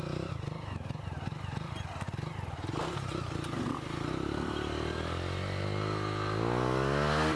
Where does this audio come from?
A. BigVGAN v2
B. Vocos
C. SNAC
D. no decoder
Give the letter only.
D